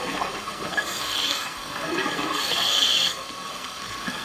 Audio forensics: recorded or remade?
remade